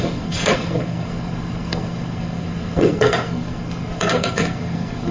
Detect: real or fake fake